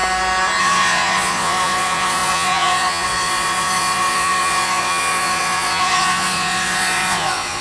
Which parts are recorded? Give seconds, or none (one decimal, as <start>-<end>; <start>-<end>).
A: 0.0-0.6